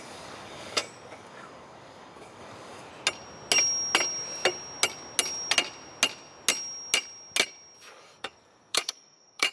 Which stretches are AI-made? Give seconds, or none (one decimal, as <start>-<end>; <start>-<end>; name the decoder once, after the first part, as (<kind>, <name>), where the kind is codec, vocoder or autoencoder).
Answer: 0.0-2.9 (codec, DAC); 7.9-9.5